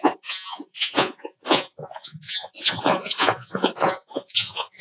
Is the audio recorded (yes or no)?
no